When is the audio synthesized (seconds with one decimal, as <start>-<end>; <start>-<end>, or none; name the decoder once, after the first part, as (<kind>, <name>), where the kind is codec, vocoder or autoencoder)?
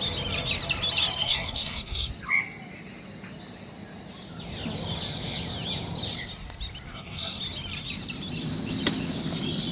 1.2-2.1 (codec, SNAC); 6.9-7.4